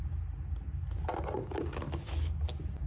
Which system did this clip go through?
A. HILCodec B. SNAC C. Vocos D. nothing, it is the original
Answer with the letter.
D